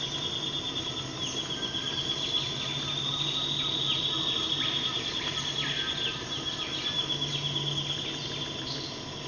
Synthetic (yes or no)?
no